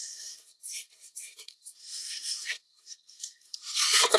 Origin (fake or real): fake